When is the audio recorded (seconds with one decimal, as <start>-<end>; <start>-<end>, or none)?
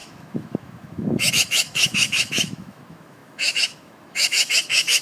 none